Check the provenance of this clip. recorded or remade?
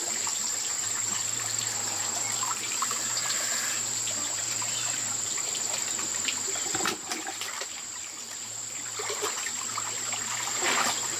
remade